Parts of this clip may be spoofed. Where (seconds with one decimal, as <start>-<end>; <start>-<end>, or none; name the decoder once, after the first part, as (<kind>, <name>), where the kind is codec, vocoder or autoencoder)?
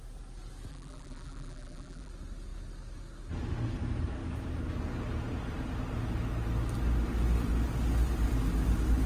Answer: 0.7-2.1 (vocoder, BigVGAN v2)